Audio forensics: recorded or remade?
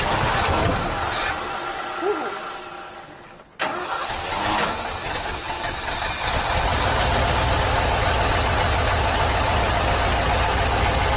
recorded